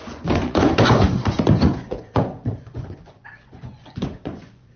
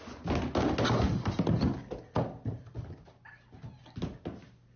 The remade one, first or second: first